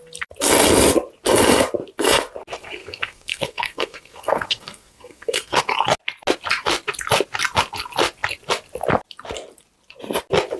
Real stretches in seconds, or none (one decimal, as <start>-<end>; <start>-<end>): 0.0-2.8; 5.6-10.6